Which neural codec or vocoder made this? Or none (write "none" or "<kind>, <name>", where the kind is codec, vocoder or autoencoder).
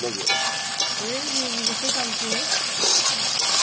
none